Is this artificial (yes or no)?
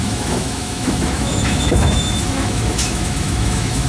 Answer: yes